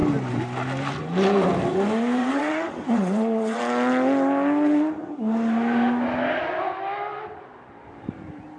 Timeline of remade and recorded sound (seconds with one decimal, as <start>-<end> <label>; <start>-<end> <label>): 0.0-2.2 recorded; 2.2-3.6 remade; 3.6-8.6 recorded